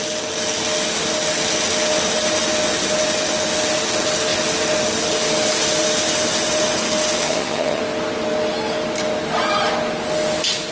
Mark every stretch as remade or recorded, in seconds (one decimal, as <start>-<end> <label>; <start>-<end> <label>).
0.0-7.2 recorded; 7.2-7.8 remade; 7.8-10.7 recorded